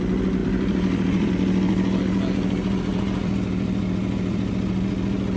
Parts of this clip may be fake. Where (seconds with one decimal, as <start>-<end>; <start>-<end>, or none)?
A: 0.4-1.3; 2.9-4.5